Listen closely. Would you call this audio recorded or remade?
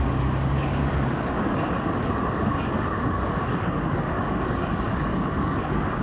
remade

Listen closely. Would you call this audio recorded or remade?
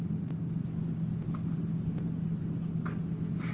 recorded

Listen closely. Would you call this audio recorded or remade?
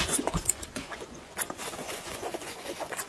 remade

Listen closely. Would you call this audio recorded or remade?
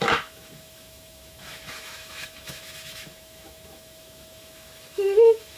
remade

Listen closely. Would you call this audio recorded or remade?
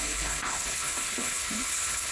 remade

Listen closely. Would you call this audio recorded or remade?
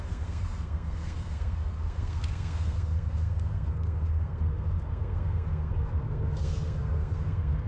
remade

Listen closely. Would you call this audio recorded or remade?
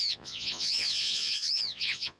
remade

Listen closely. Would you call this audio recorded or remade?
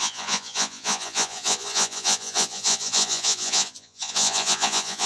remade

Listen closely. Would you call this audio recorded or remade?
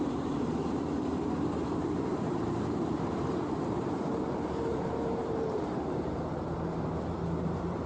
remade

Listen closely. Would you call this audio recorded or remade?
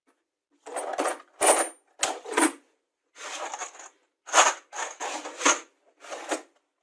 recorded